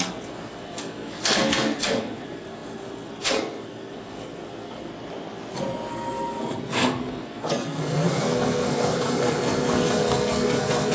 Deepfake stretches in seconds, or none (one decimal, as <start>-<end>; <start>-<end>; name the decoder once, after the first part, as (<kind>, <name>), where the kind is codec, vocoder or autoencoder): 0.0-4.9 (codec, SNAC); 5.9-10.9

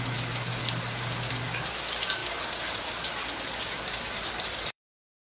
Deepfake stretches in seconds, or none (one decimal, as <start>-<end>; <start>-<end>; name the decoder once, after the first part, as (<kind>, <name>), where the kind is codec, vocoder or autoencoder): 0.0-0.6 (codec, DAC); 1.3-5.4